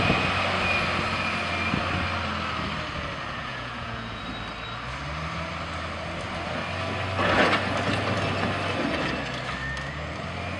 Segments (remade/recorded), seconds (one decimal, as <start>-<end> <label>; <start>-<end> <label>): 0.0-3.5 recorded; 3.5-4.2 remade; 4.2-10.6 recorded